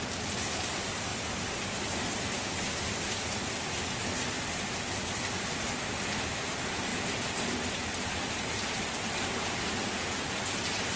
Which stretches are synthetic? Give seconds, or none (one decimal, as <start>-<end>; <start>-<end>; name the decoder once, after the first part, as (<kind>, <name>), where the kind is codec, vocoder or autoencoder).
6.9-9.1 (vocoder, BigVGAN v2)